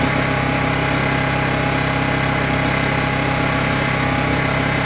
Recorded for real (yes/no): yes